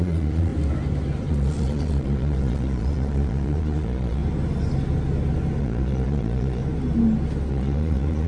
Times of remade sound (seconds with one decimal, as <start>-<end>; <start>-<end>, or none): 0.0-0.5; 1.3-4.2; 5.6-6.6; 7.5-8.3